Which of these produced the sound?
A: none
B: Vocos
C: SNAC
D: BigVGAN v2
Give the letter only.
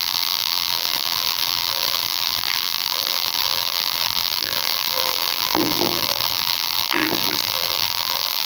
D